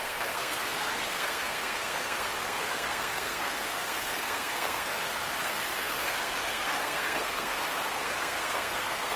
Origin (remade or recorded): remade